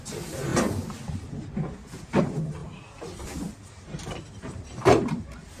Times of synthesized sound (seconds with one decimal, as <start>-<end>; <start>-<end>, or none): 0.0-0.5; 2.2-2.6; 3.5-5.6